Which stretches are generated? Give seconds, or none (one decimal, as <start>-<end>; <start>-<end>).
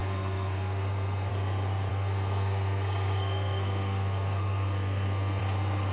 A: 0.0-1.3; 1.9-5.4